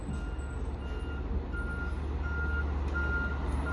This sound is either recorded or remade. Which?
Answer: recorded